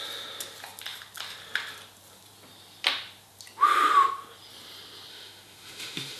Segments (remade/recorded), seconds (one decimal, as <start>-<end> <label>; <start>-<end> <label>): 0.0-5.1 recorded; 5.1-6.2 remade